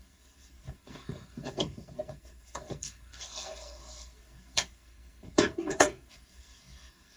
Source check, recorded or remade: remade